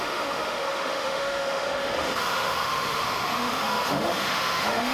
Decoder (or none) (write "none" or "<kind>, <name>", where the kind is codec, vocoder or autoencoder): autoencoder, DAC-VAE